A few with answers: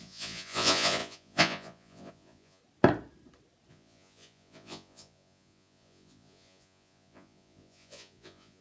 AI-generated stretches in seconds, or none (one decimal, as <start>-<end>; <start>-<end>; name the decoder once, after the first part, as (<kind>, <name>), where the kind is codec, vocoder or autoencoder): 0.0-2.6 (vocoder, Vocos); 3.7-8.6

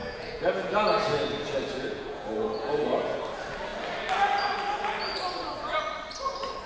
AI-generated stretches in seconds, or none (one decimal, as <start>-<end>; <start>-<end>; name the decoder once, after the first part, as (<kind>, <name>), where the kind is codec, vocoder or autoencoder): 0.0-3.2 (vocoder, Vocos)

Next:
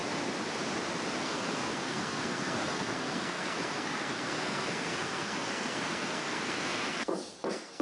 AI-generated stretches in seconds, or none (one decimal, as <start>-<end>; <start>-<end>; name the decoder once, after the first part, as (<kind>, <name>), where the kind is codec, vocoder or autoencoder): 1.2-7.8 (codec, SNAC)

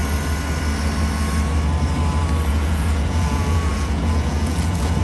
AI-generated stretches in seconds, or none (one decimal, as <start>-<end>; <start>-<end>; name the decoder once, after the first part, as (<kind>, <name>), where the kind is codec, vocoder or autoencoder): 2.5-5.0 (vocoder, Vocos)

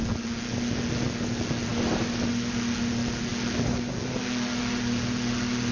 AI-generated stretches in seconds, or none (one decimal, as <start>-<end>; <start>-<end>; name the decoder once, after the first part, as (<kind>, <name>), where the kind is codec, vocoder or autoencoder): 1.7-2.3 (vocoder, BigVGAN v2)

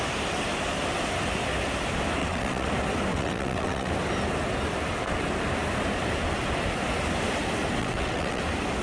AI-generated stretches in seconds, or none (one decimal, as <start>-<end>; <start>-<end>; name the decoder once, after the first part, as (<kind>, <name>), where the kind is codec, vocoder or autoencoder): 2.2-2.7 (vocoder, WaveNeXt); 3.1-3.9; 7.8-8.4

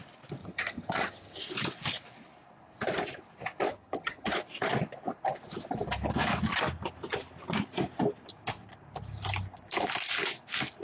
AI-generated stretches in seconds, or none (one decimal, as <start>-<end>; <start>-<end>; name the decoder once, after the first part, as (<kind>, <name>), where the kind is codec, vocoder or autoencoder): 0.4-1.4 (vocoder, HiFi-GAN); 3.7-4.3